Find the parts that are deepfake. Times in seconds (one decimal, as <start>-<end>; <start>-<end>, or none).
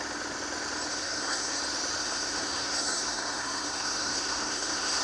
0.9-1.6; 2.0-5.0